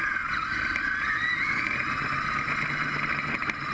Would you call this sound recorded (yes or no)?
yes